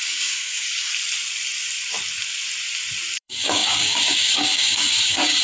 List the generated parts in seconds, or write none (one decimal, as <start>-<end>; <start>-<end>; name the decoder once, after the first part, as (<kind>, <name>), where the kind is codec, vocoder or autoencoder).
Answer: 0.0-0.9 (codec, DAC); 3.2-5.4